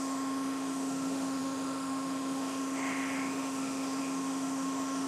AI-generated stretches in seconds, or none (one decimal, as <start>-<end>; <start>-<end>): 0.0-5.1